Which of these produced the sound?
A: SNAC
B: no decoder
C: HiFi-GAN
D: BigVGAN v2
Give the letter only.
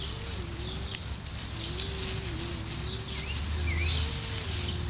B